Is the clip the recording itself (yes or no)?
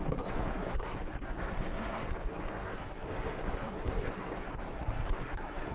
no